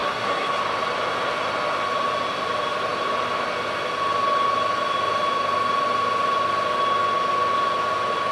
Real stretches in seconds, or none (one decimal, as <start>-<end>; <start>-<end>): 0.6-8.3